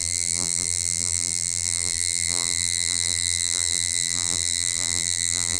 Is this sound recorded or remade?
remade